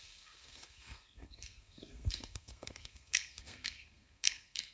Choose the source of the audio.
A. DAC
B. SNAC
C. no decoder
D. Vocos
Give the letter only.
B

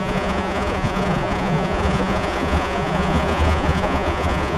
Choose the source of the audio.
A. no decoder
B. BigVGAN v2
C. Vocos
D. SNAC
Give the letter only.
C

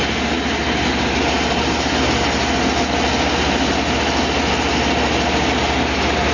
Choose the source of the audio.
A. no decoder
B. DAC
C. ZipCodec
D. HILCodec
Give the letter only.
A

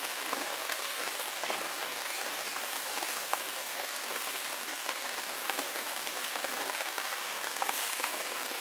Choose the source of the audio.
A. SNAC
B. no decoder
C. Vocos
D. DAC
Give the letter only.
D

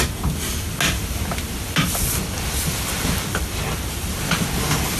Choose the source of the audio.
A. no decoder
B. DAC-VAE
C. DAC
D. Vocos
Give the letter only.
A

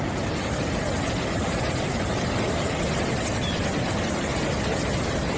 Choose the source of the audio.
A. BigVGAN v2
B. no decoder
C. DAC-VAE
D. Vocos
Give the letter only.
B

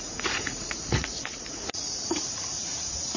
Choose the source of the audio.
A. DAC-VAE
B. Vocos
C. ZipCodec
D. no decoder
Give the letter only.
B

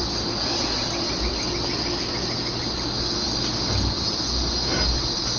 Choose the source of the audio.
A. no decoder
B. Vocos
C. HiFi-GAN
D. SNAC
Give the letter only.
A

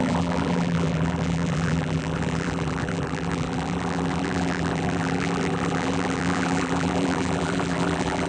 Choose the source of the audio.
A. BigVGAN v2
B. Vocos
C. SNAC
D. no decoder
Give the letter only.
A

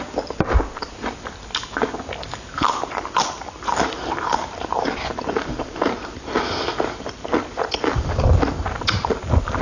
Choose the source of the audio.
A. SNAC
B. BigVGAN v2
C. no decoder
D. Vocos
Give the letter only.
C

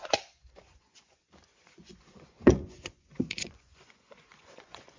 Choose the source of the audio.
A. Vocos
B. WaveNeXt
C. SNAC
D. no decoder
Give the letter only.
A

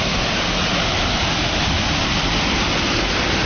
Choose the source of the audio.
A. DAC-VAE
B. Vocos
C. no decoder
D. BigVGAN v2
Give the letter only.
C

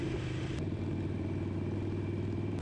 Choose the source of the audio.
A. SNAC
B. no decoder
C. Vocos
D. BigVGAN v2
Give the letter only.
B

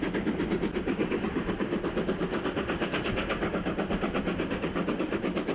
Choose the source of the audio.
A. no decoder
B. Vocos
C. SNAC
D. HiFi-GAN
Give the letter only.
A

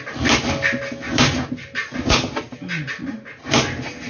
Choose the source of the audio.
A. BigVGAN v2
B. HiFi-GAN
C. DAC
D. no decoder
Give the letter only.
D